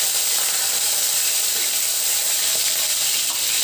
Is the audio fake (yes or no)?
no